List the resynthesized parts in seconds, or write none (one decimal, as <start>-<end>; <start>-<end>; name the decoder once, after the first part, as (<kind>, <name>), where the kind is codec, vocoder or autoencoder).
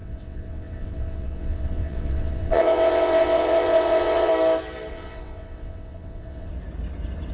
0.0-4.3 (vocoder, WaveNeXt); 4.9-6.5